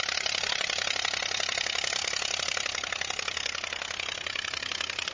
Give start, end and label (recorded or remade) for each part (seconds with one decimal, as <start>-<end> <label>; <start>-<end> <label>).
0.0-5.1 recorded